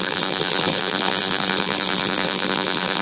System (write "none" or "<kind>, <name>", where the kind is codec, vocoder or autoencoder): vocoder, BigVGAN v2